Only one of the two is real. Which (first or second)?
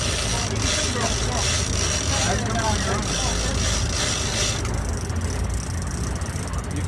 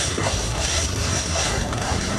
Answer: first